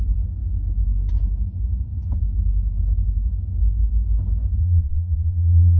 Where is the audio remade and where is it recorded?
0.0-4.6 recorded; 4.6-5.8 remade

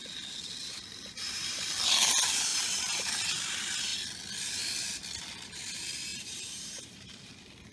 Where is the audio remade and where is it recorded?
0.0-0.6 recorded; 0.6-1.7 remade; 1.7-2.5 recorded; 2.5-3.1 remade; 3.1-6.1 recorded; 6.1-7.3 remade; 7.3-7.7 recorded

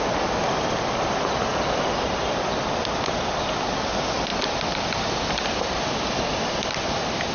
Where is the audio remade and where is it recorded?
0.0-4.3 recorded; 4.3-5.8 remade; 5.8-7.3 recorded

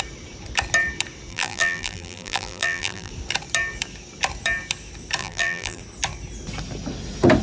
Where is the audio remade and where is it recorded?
0.0-1.3 recorded; 1.3-3.1 remade; 3.1-5.2 recorded; 5.2-5.8 remade; 5.8-7.4 recorded

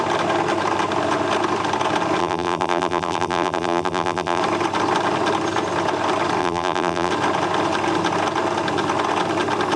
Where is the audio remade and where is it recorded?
0.0-2.2 recorded; 2.2-4.4 remade; 4.4-6.4 recorded; 6.4-7.1 remade; 7.1-9.8 recorded

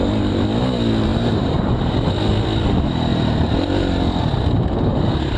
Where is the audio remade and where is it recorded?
0.0-1.1 recorded; 1.1-1.9 remade; 1.9-3.1 recorded; 3.1-3.7 remade; 3.7-5.4 recorded

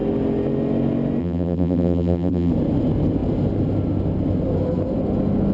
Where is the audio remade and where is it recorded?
0.0-1.2 recorded; 1.2-2.5 remade; 2.5-5.5 recorded

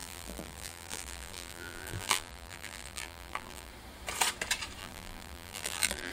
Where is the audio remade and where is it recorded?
0.0-3.7 remade; 3.7-4.8 recorded; 4.8-6.1 remade